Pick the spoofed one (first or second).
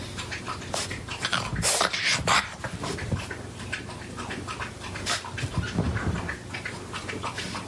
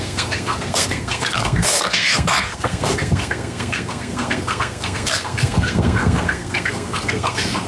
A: second